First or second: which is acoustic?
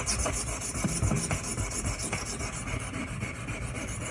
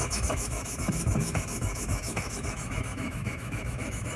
first